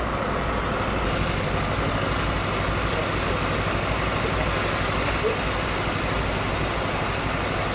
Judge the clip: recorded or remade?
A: recorded